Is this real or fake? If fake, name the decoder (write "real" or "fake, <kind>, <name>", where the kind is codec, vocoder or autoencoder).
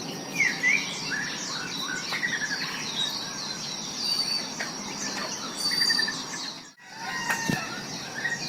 real